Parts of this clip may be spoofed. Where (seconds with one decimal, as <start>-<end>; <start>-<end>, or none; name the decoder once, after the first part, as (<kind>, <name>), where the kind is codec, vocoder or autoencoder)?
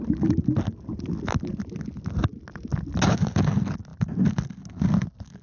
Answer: none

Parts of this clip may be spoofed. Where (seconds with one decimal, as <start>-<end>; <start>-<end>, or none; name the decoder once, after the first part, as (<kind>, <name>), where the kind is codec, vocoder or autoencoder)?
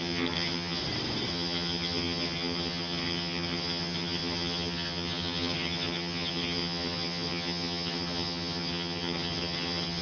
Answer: 0.0-0.8 (vocoder, HiFi-GAN); 1.3-10.0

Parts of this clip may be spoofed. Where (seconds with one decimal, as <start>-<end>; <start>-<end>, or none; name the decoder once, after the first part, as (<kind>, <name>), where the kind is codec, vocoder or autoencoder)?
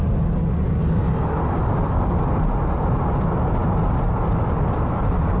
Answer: none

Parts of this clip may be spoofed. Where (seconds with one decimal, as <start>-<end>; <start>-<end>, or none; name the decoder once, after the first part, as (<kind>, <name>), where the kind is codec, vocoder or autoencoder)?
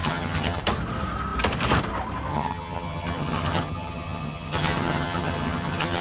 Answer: 0.0-0.6 (vocoder, HiFi-GAN); 2.3-6.0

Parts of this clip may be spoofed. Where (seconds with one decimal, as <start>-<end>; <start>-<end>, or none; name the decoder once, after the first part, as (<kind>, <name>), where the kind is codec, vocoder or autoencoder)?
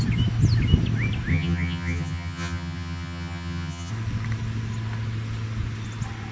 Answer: 1.3-3.9 (vocoder, HiFi-GAN)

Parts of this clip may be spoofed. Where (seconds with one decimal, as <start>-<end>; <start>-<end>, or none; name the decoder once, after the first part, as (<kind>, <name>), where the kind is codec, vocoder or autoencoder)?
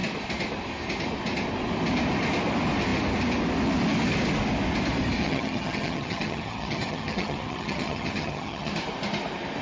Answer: 5.2-8.7 (vocoder, HiFi-GAN)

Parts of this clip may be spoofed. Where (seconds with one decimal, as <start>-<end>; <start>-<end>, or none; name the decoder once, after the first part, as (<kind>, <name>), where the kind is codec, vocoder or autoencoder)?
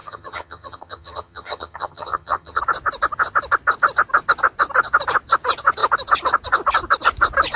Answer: 0.0-2.6 (vocoder, HiFi-GAN)